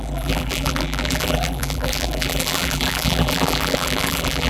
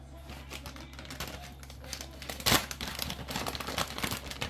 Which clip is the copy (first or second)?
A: first